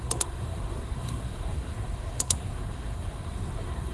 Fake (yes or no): yes